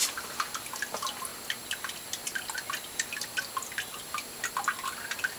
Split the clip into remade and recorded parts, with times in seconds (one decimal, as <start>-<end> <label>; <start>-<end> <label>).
0.0-5.4 recorded